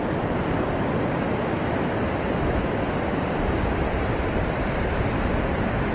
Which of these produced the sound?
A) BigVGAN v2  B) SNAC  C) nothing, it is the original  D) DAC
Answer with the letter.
C